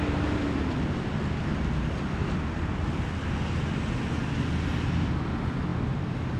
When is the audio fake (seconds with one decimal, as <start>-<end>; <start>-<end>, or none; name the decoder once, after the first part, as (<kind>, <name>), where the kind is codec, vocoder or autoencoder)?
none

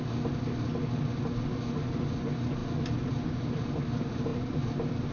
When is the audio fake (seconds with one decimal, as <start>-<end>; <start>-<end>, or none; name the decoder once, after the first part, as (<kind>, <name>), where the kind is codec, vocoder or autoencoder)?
none

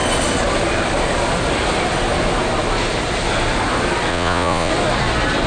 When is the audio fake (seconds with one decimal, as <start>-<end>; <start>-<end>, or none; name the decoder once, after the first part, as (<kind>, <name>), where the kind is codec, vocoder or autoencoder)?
4.1-4.7 (vocoder, Vocos)

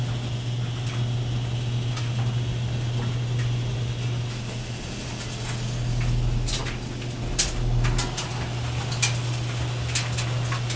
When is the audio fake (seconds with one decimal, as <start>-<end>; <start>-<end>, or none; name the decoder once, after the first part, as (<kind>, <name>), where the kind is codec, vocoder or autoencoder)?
none

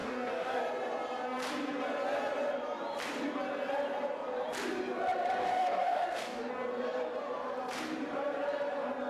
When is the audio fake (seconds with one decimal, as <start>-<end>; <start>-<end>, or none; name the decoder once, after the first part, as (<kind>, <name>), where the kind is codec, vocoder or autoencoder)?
0.0-0.6 (codec, DAC); 5.4-6.5

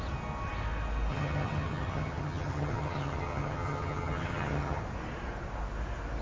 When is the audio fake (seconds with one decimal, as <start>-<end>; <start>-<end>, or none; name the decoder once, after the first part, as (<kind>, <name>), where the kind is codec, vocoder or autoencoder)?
1.1-4.8 (vocoder, HiFi-GAN)

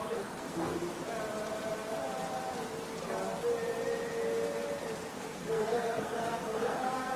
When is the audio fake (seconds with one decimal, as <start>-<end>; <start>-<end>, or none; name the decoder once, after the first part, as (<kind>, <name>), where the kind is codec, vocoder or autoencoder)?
0.0-0.8 (codec, SNAC); 5.1-7.2